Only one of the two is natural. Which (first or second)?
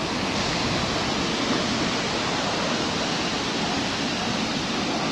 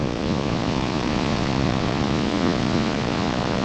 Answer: first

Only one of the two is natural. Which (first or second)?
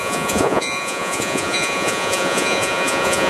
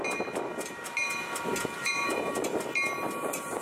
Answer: second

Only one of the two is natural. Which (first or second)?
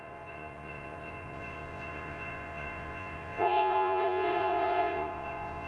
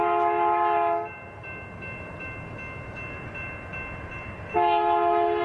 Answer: second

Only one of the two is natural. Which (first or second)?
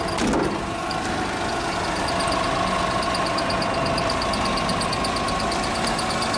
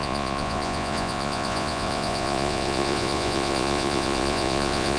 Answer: first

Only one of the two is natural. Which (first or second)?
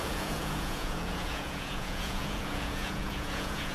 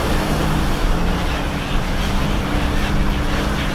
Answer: second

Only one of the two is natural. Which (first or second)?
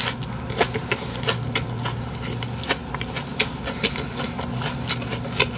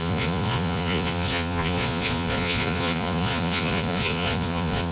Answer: first